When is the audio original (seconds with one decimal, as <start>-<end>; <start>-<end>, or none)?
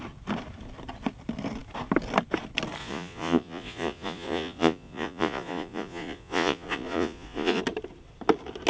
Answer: 0.0-2.8; 7.6-8.7